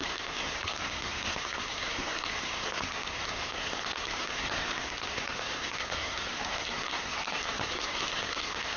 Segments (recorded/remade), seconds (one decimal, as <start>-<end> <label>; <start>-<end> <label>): 0.0-8.8 remade